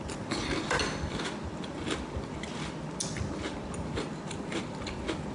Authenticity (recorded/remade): recorded